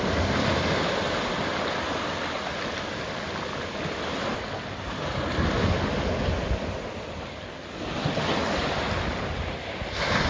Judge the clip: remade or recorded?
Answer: recorded